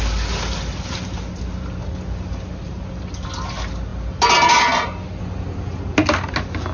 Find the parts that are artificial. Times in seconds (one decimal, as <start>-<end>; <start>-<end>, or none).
none